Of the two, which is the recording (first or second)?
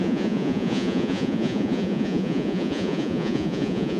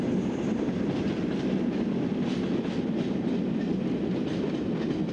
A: second